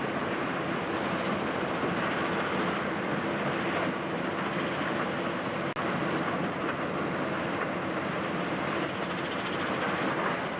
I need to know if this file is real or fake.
real